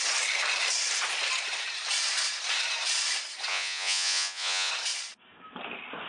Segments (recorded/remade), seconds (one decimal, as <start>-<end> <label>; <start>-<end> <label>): 0.0-3.5 recorded; 3.5-4.7 remade; 4.7-6.1 recorded